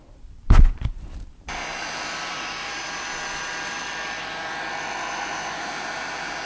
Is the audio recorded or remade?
remade